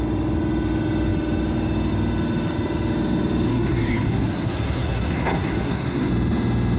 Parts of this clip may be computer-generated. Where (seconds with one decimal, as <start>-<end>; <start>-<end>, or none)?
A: 3.5-6.1